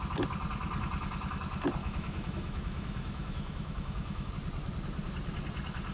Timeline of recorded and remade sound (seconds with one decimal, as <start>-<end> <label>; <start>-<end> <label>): 0.0-1.8 recorded; 1.8-4.3 remade; 4.3-5.9 recorded